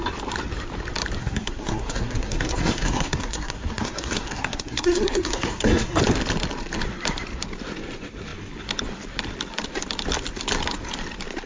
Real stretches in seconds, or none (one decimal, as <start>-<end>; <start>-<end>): 0.0-1.2; 6.0-11.5

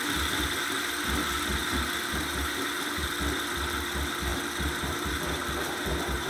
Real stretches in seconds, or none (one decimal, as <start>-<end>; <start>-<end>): 0.0-1.6; 3.1-4.3

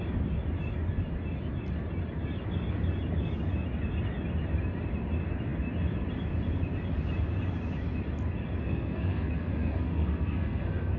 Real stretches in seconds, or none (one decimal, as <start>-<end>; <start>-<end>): 0.0-8.6

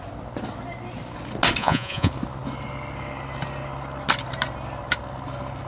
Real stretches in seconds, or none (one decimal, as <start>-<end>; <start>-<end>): 0.0-1.6; 2.1-5.7